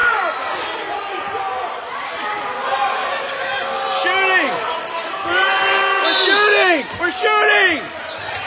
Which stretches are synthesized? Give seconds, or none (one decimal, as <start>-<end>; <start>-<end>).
none

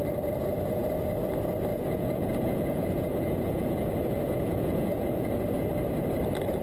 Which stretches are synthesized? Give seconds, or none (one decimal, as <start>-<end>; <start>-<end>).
1.7-5.4

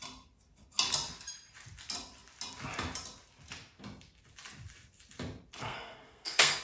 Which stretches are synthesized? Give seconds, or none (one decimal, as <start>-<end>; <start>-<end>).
5.6-6.6

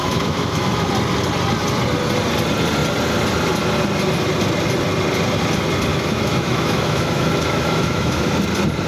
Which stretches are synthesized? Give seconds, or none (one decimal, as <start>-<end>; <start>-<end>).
0.0-0.9; 5.9-8.3

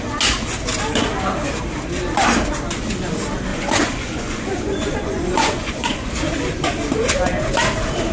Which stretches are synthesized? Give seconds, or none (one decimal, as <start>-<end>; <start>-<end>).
3.5-6.1

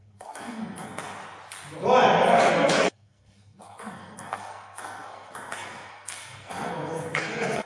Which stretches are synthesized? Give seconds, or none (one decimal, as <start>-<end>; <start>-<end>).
0.0-1.2; 2.5-7.7

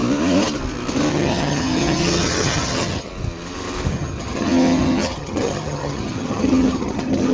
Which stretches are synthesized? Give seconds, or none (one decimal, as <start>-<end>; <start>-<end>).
1.1-3.1; 3.9-7.3

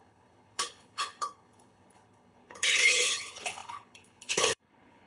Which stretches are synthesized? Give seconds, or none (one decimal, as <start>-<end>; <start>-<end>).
0.0-5.1